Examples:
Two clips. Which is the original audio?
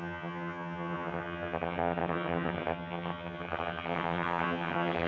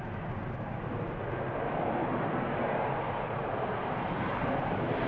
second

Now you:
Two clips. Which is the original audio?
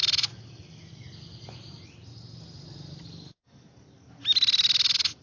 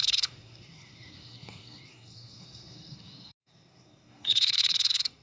first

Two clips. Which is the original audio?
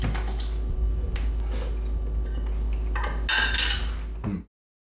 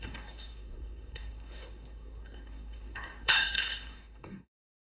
first